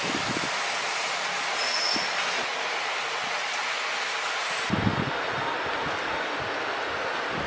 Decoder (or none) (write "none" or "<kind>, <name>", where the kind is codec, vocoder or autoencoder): none